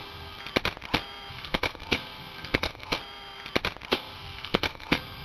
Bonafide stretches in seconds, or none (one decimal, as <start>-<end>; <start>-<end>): 0.4-1.3; 3.0-3.9